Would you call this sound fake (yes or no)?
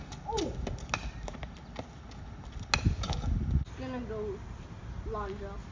no